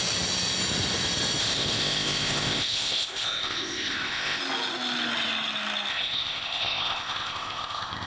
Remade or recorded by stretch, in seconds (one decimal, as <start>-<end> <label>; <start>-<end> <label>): 0.0-1.4 recorded; 1.4-4.4 remade; 4.4-5.9 recorded; 5.9-8.1 remade